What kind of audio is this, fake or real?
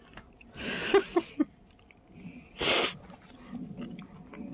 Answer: real